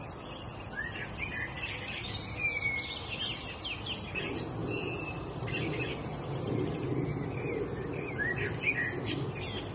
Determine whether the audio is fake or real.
real